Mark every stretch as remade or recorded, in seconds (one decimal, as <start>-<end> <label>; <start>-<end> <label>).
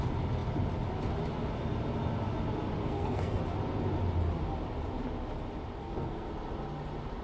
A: 0.0-2.8 recorded; 2.8-3.4 remade; 3.4-5.8 recorded; 5.8-6.3 remade; 6.3-7.2 recorded